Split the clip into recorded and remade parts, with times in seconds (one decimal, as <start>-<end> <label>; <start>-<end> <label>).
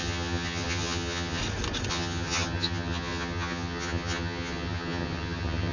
0.0-1.4 remade; 1.4-1.9 recorded; 1.9-5.7 remade